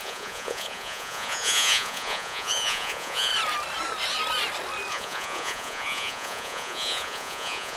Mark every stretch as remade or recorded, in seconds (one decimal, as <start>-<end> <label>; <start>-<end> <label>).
0.0-3.3 remade; 3.3-4.9 recorded; 4.9-7.8 remade